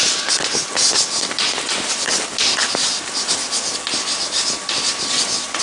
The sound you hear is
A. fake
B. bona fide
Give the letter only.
B